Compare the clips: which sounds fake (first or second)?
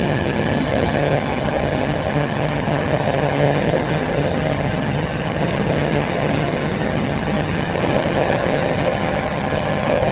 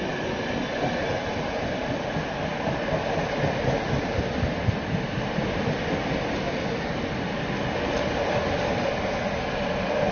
first